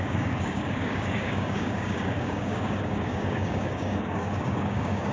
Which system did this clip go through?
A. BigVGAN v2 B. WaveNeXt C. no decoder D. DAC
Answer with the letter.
D